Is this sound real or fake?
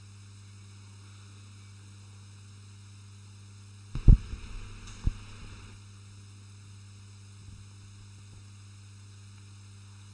real